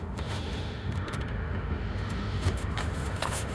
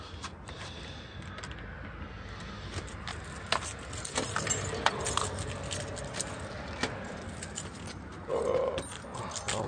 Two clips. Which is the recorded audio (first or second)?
second